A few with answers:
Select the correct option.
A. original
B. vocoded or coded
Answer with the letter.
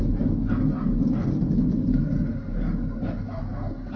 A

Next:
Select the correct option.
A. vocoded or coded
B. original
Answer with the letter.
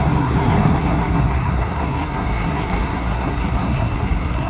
A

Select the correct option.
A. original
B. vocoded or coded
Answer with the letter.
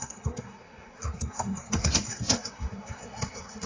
B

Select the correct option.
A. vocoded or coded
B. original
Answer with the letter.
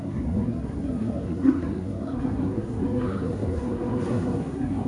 A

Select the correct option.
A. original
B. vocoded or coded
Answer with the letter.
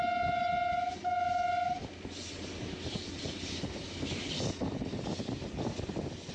A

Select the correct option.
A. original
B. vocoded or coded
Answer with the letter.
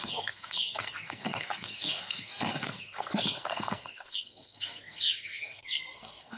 B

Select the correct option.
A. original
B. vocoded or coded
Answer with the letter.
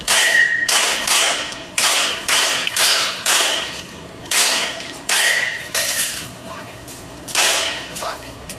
B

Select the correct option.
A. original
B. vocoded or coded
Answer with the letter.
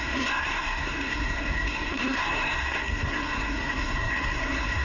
B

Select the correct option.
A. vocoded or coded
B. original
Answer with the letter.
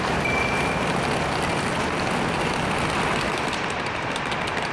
B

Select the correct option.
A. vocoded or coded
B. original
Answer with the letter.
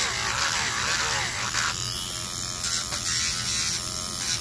B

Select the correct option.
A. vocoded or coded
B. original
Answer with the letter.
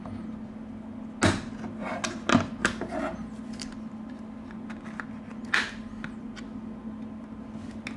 B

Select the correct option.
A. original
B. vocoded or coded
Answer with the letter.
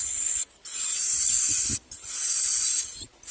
A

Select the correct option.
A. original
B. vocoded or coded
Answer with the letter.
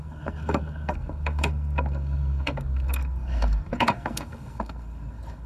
B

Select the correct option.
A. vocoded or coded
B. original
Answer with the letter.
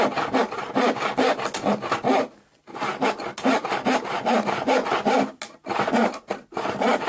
B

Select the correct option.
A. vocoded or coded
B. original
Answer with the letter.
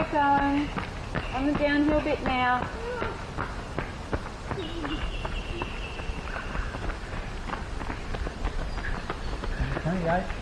B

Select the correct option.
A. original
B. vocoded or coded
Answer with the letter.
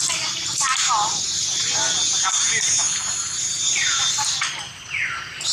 A